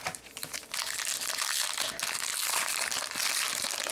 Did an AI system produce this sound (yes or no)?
no